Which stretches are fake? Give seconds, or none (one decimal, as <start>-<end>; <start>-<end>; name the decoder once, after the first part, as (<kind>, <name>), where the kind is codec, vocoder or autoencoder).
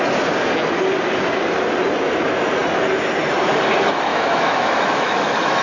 4.1-5.6 (autoencoder, DAC-VAE)